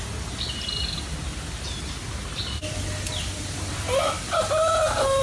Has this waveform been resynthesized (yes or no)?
no